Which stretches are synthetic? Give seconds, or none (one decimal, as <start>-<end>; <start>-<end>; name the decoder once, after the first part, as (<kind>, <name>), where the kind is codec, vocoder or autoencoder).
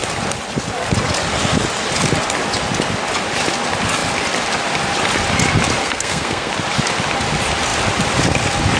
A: 5.8-6.5 (codec, SNAC)